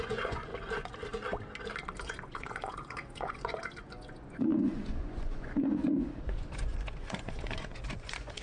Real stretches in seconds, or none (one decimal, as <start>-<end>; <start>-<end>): 0.5-2.0